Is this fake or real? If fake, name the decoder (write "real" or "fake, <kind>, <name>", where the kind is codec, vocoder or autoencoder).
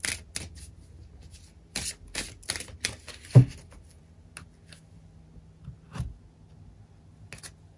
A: real